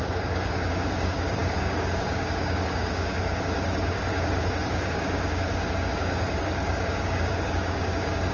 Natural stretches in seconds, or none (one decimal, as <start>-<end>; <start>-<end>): none